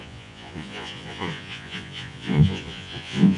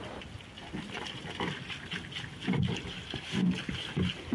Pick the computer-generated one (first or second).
first